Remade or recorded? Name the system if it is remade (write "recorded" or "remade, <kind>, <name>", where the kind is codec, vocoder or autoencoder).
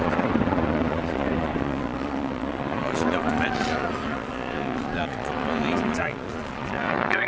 remade, vocoder, Vocos